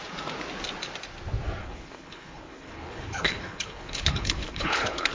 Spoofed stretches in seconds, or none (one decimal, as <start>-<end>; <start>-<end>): 1.6-5.1